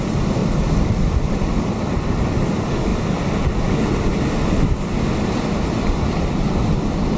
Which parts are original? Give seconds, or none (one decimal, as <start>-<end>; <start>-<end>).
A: 0.0-7.2